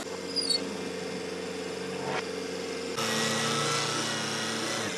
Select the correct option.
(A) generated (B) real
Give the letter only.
B